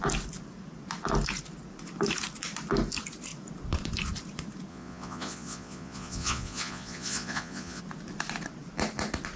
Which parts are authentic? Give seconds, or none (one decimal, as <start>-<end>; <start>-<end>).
0.0-4.7; 7.8-9.4